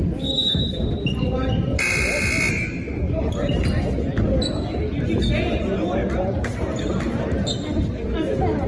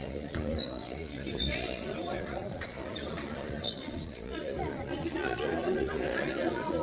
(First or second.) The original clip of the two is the first